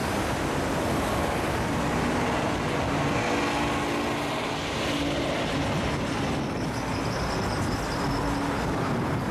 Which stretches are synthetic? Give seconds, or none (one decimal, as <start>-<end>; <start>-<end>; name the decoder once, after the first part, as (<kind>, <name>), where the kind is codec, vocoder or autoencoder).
none

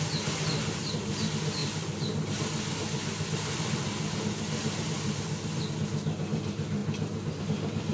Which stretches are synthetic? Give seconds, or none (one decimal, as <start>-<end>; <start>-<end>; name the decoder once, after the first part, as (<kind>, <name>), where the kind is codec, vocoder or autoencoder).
none

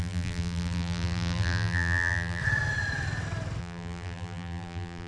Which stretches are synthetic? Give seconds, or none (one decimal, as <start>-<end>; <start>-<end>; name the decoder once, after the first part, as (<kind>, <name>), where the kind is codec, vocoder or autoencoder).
0.0-2.4 (vocoder, BigVGAN v2); 3.6-5.1

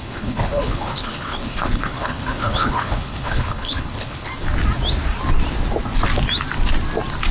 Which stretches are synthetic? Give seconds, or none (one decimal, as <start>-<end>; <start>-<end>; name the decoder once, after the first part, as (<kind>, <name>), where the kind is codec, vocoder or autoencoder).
0.0-4.3 (codec, HILCodec)

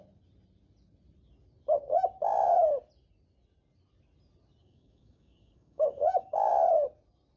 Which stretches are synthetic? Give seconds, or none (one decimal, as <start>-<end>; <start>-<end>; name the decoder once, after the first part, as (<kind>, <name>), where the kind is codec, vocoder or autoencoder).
4.6-6.5 (codec, DAC)

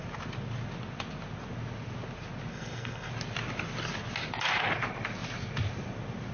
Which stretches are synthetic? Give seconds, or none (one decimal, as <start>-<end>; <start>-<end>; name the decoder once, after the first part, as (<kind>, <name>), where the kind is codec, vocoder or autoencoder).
2.5-3.1 (codec, SNAC)